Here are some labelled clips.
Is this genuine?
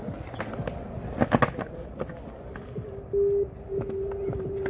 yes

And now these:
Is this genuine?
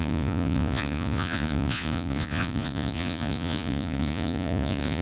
no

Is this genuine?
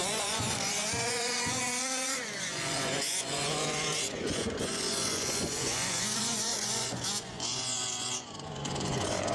no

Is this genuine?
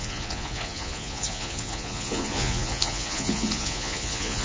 no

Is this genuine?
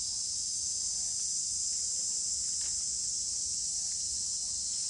yes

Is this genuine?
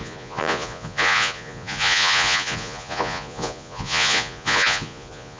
no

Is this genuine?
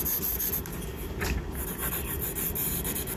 yes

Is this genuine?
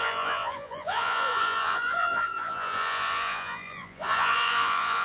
no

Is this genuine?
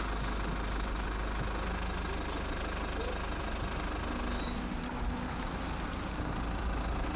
yes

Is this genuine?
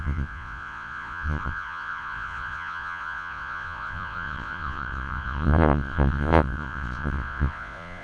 no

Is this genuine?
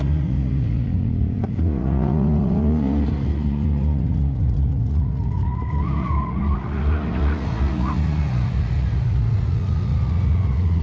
no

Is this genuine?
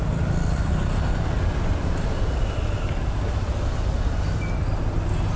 yes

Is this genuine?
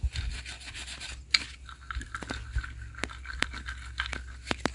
yes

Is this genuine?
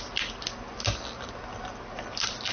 yes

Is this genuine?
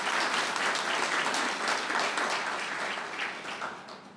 yes